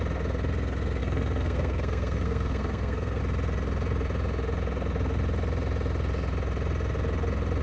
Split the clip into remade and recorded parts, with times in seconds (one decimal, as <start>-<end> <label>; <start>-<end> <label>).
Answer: 0.0-1.0 recorded; 1.0-3.2 remade; 3.2-7.6 recorded